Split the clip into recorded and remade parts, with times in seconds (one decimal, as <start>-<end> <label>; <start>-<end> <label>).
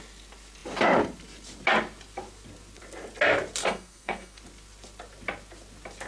0.0-3.6 recorded; 3.6-4.4 remade; 4.4-6.1 recorded